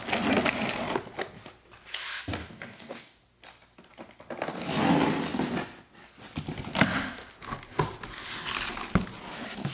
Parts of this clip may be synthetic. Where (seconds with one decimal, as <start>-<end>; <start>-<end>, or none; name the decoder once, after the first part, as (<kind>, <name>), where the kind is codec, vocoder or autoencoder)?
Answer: 2.4-3.2 (codec, DAC)